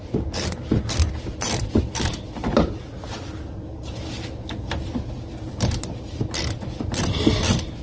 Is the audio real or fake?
real